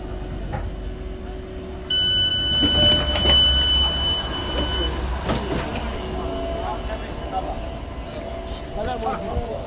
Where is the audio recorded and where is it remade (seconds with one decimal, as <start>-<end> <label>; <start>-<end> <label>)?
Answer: 0.0-9.7 recorded